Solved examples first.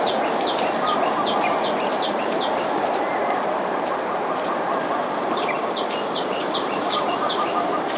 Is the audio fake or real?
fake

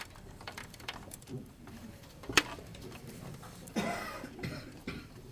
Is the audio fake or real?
fake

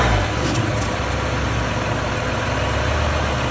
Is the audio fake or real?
real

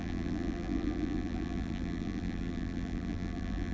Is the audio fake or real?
fake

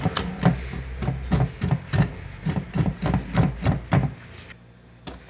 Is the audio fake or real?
real